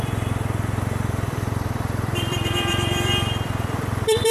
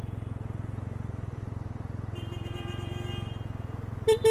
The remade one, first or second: first